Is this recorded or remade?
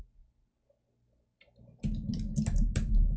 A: recorded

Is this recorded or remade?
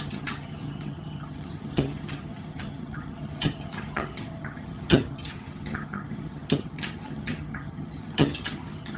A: remade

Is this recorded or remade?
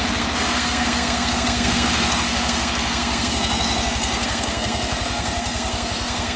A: remade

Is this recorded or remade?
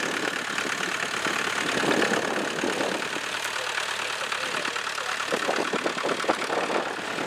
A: recorded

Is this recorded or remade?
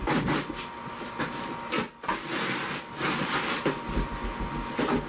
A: recorded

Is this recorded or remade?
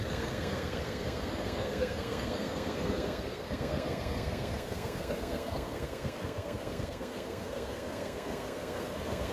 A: remade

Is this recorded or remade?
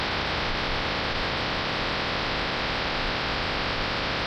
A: recorded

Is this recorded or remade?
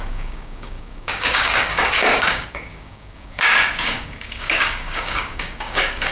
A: remade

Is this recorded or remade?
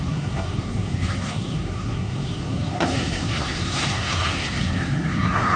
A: remade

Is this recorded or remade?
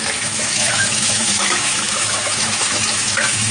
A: remade